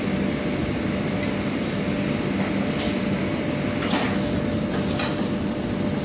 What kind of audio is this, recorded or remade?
recorded